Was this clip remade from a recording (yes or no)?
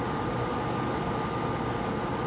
no